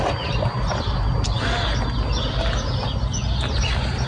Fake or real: real